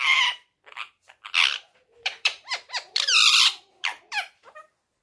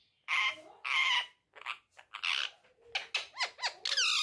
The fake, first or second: first